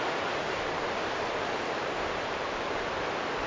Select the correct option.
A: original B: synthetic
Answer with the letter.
B